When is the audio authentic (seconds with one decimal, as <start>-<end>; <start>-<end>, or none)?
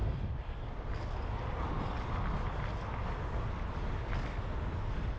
0.0-5.2